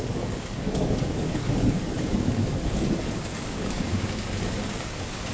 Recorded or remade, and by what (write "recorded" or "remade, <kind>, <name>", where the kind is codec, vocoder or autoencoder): remade, codec, DAC